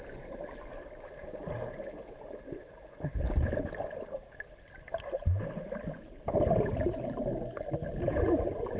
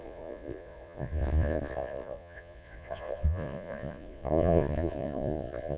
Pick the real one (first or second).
first